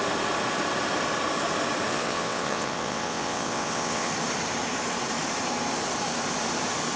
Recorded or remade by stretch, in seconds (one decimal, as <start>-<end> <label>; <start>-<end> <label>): 0.0-1.9 recorded; 1.9-4.1 remade; 4.1-7.0 recorded